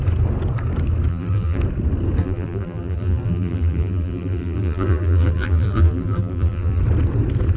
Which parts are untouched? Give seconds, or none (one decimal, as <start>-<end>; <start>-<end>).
0.0-1.1; 1.6-2.2; 6.8-7.6